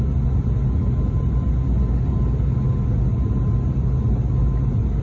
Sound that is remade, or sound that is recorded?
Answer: recorded